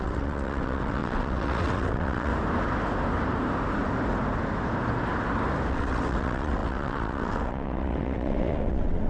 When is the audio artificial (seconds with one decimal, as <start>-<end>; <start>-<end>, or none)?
0.0-2.3; 5.7-9.1

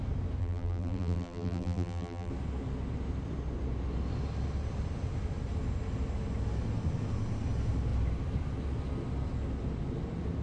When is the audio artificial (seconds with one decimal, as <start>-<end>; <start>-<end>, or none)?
0.4-2.3

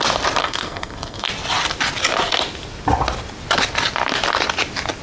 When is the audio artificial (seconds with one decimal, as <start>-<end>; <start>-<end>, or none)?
0.4-1.3

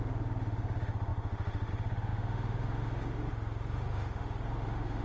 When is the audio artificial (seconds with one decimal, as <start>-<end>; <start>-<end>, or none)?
0.0-5.0

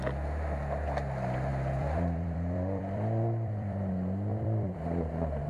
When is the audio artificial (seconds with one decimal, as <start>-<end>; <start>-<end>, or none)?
1.5-3.9; 4.3-5.1

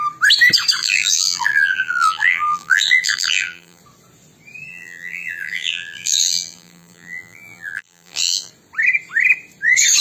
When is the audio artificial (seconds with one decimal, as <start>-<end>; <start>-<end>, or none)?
0.8-3.8; 4.7-8.5